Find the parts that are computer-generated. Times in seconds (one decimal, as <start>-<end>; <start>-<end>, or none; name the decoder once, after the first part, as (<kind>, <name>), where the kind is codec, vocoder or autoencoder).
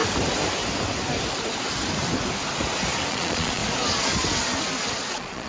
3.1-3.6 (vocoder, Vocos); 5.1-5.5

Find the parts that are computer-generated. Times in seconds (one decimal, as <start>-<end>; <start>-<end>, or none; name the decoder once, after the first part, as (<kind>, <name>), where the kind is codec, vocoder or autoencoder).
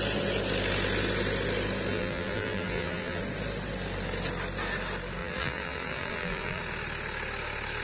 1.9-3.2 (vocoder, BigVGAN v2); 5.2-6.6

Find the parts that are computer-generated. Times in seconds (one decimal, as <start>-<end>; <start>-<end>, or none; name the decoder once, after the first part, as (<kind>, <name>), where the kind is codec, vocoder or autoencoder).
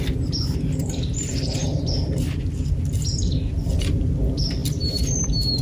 none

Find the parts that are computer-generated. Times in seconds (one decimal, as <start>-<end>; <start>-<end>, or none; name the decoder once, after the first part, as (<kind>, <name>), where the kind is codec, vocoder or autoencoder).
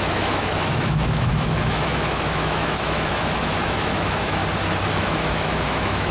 0.0-4.4 (autoencoder, DAC-VAE); 5.0-6.1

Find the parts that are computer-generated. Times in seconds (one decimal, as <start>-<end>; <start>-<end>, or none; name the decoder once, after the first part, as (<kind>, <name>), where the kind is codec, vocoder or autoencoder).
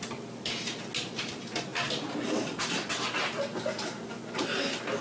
none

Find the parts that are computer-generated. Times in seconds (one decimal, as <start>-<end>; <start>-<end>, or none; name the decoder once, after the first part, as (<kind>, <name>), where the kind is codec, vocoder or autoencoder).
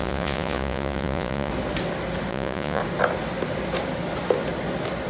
0.0-1.5 (vocoder, Vocos); 2.3-2.8